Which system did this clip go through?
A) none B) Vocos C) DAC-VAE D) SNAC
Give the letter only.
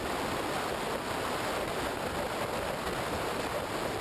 A